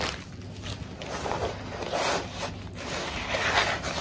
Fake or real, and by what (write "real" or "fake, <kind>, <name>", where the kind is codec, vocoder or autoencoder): real